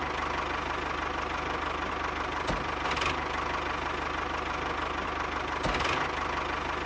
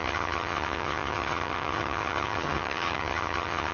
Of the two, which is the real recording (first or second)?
first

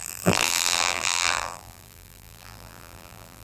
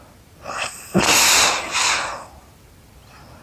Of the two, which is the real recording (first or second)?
second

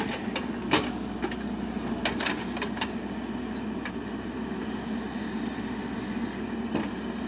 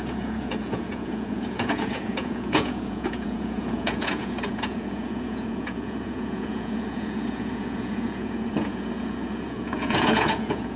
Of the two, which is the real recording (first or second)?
first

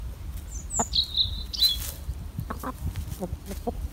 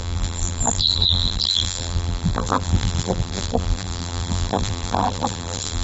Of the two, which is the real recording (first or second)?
first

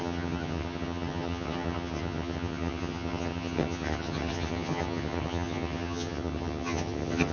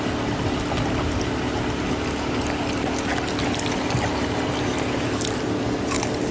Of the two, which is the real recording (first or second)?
second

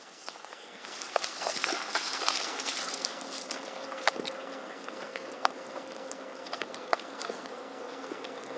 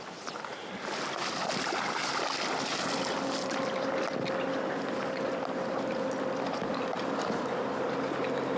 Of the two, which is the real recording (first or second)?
second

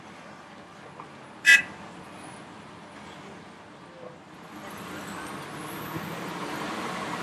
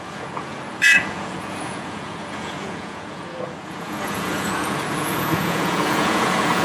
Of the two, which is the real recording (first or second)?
first